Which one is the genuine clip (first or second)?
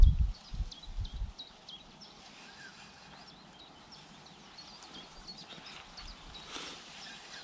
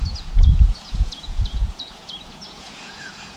first